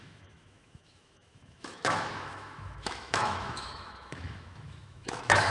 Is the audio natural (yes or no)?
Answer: no